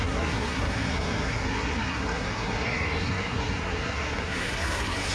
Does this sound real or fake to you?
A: fake